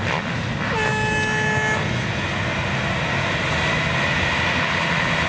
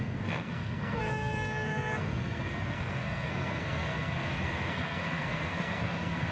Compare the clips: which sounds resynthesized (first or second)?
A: second